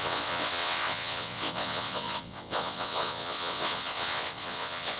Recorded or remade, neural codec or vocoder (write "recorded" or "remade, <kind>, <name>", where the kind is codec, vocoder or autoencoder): remade, vocoder, WaveNeXt